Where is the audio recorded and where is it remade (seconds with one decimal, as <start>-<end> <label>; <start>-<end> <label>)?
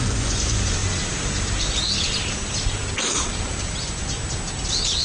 0.0-0.8 remade; 0.8-3.8 recorded; 3.8-4.2 remade; 4.2-5.0 recorded